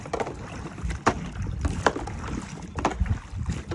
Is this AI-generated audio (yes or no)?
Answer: yes